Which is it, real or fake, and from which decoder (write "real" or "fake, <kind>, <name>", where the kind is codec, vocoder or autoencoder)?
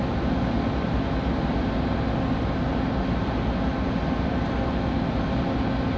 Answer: real